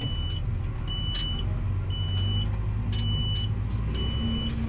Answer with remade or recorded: recorded